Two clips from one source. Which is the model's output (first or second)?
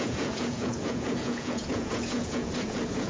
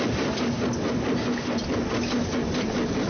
first